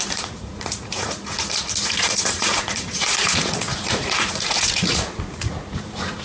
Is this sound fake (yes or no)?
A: yes